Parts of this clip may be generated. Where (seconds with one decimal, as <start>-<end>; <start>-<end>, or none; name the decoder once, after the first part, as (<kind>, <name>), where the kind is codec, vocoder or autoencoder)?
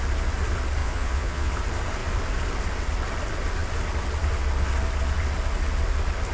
0.8-1.5 (vocoder, Vocos)